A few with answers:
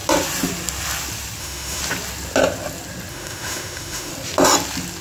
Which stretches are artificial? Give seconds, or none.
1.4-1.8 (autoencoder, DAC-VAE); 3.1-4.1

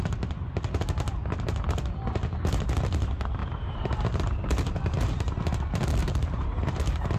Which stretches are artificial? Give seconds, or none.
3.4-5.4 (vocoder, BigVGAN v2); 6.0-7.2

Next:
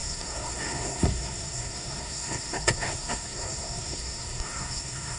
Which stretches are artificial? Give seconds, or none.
0.0-5.2 (codec, SNAC)

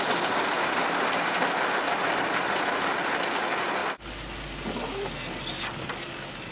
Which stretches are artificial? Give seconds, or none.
none

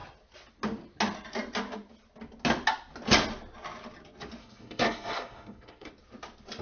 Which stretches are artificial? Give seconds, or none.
4.4-5.9 (codec, SNAC)

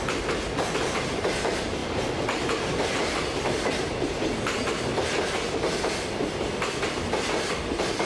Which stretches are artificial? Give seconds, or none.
none

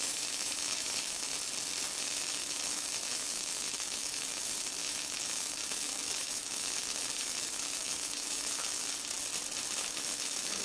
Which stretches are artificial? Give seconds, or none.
0.0-1.3 (autoencoder, DAC-VAE); 2.0-8.9; 9.8-10.6